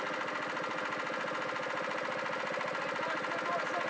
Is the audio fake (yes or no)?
no